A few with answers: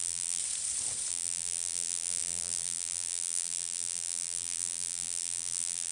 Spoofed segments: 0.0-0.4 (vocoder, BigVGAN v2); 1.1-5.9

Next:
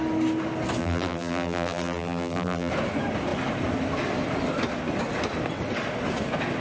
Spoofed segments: 0.8-2.7 (vocoder, BigVGAN v2)